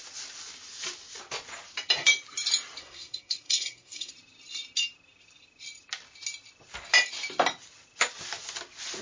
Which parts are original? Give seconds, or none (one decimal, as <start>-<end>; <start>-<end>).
0.0-2.8; 4.1-9.0